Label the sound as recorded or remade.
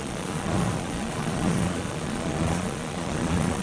remade